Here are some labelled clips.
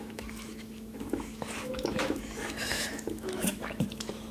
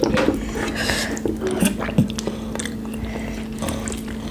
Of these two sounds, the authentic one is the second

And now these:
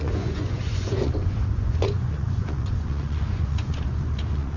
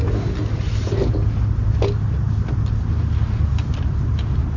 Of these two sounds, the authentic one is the second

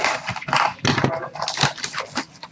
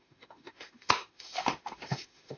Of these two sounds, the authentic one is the first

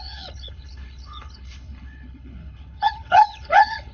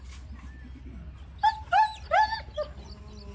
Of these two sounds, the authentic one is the second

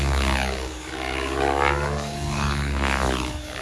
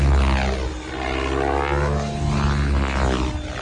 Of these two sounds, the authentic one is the second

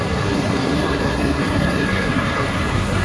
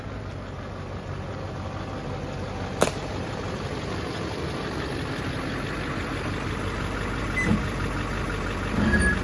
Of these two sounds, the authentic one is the second